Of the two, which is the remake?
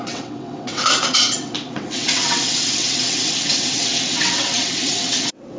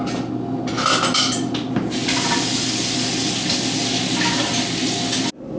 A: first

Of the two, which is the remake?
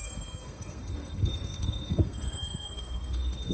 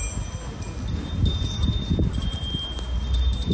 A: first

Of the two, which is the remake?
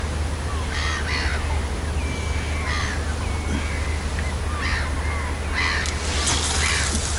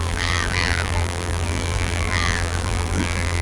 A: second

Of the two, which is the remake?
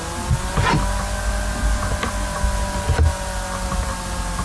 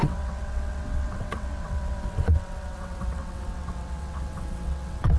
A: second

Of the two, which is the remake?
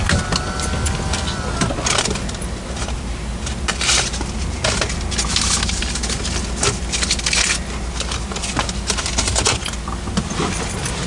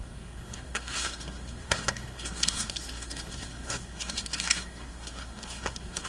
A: second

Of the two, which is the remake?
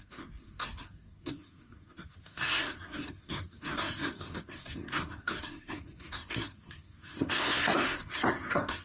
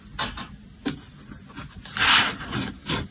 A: first